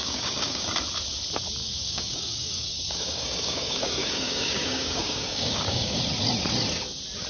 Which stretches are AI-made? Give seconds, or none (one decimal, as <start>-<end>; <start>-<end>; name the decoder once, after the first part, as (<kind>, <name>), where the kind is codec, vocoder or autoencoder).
0.0-0.7 (codec, DAC); 1.6-6.0